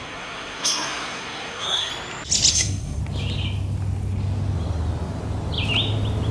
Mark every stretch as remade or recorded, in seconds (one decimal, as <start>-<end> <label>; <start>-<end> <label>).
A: 0.0-1.9 remade; 1.9-2.5 recorded; 2.5-3.0 remade; 3.0-6.3 recorded